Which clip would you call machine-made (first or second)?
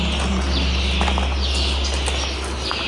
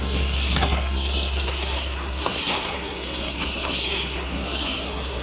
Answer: second